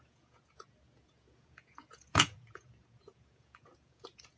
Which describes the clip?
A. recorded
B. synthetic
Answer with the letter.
B